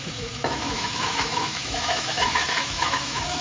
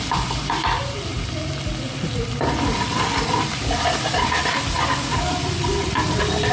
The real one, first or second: second